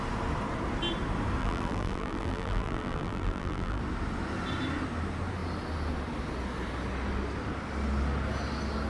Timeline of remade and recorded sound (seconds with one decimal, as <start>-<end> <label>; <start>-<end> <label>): 0.0-1.4 recorded; 1.4-3.8 remade; 3.8-8.9 recorded